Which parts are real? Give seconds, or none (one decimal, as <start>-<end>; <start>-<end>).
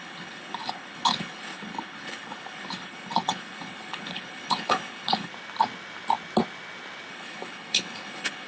5.3-7.1